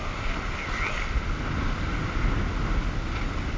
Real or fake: real